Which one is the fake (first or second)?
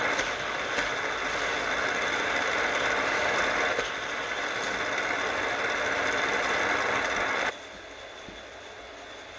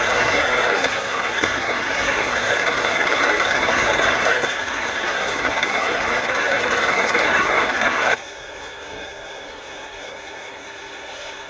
second